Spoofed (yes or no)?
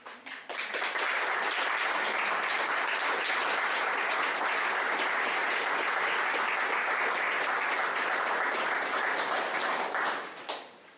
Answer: no